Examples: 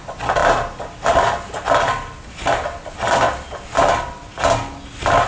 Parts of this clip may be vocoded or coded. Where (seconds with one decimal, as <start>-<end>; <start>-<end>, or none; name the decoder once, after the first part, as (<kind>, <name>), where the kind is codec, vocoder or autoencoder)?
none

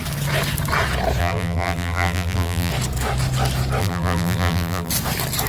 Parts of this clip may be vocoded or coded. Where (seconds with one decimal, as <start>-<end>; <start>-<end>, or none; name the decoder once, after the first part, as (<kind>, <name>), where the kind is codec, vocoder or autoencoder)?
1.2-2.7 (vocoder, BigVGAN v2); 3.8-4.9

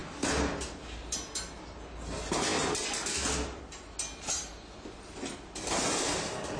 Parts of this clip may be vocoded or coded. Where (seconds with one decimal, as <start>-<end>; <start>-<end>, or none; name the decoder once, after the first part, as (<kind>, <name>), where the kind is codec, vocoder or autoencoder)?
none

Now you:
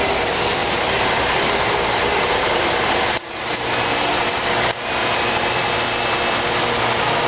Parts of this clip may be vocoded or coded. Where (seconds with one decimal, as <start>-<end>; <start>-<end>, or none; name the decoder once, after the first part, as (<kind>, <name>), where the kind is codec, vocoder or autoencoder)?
0.6-3.0 (vocoder, BigVGAN v2); 5.0-5.7